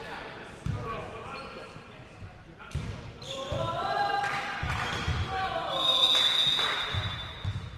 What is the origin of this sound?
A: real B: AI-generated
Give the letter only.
B